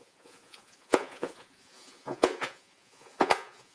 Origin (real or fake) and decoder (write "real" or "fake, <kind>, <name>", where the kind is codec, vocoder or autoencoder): fake, vocoder, Vocos